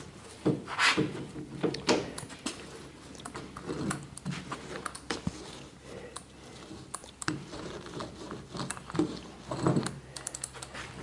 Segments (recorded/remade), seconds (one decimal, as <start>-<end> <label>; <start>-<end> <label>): 0.0-11.0 recorded